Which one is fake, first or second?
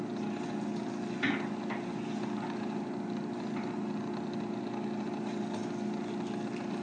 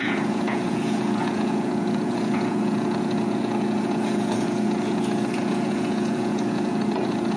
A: second